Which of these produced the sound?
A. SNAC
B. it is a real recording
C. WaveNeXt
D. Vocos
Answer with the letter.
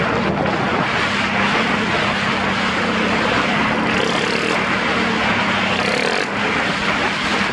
B